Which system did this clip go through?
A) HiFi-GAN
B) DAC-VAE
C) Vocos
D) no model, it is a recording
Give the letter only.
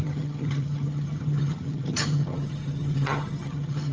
A